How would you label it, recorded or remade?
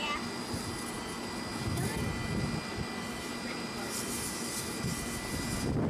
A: recorded